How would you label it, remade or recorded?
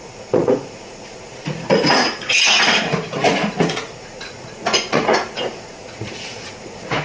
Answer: remade